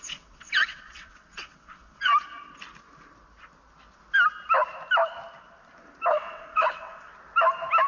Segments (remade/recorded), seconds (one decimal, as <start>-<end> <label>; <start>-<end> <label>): 0.0-2.1 remade; 2.1-6.1 recorded; 6.1-7.1 remade; 7.1-7.9 recorded